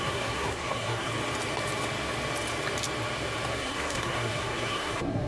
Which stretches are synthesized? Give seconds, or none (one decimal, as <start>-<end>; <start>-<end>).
0.0-1.1; 3.5-5.3